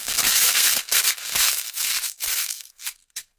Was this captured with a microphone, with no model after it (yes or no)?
no